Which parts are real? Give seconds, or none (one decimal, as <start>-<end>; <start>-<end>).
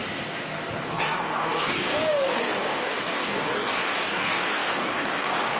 0.0-0.8